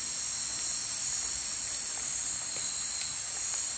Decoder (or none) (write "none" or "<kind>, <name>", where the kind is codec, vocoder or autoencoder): none